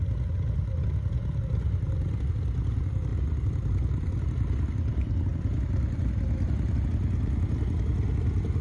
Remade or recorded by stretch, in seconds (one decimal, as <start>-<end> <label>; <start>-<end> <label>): 0.0-1.2 recorded; 1.2-2.3 remade; 2.3-3.1 recorded; 3.1-6.8 remade; 6.8-8.6 recorded